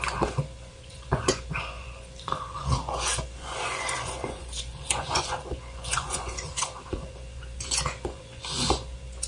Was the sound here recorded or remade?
remade